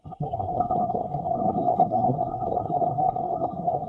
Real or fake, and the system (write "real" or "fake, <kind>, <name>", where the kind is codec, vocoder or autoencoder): fake, codec, SNAC